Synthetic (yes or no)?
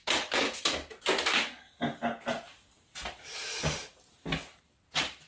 no